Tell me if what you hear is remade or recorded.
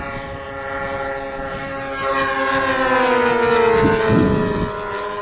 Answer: recorded